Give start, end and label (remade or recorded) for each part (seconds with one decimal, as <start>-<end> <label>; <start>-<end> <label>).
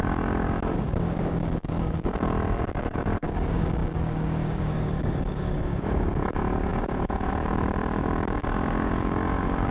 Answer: 0.0-9.7 remade